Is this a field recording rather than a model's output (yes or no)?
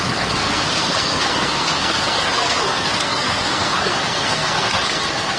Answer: no